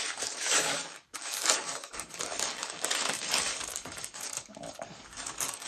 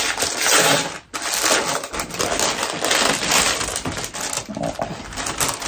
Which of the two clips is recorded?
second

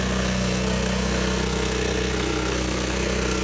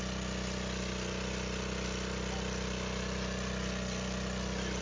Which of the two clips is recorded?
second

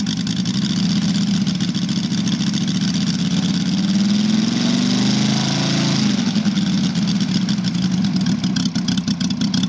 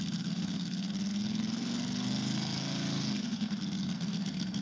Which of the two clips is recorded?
first